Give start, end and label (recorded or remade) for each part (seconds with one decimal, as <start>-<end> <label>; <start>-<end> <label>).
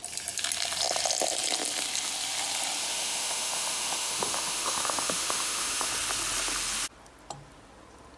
0.0-2.8 recorded; 2.8-5.9 remade; 5.9-8.2 recorded